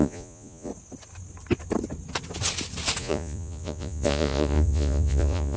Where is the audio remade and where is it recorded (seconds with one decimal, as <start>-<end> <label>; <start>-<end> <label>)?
0.0-0.7 remade; 0.7-3.0 recorded; 3.0-5.6 remade